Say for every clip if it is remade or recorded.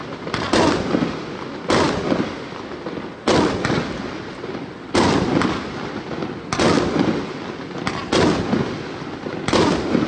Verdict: recorded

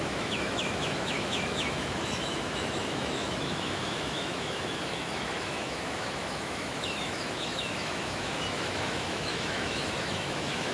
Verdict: remade